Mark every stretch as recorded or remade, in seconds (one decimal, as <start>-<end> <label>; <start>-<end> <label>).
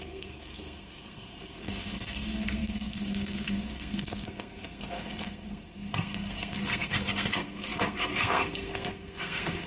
0.0-9.7 remade